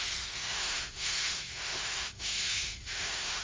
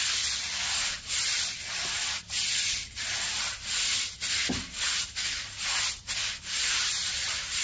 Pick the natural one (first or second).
second